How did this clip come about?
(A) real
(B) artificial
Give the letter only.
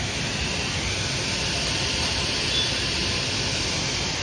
A